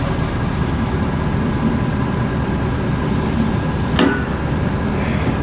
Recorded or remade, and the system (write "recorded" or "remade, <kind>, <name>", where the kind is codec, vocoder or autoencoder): recorded